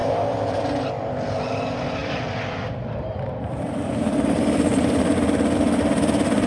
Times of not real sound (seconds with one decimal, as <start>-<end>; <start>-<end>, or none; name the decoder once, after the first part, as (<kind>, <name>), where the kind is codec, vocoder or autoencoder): 0.0-0.6 (vocoder, BigVGAN v2); 2.0-5.1